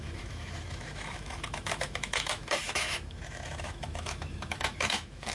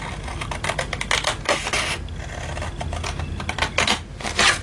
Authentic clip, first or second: second